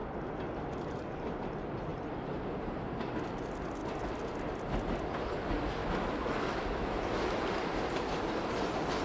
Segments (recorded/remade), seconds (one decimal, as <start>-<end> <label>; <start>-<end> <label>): 0.0-5.8 recorded; 5.8-7.4 remade; 7.4-9.0 recorded